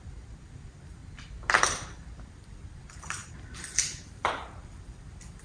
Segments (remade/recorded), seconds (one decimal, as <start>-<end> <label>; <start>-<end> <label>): 0.0-1.0 remade; 1.0-1.6 recorded; 1.6-5.4 remade